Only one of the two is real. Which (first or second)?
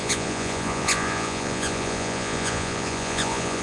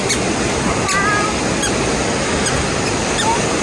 second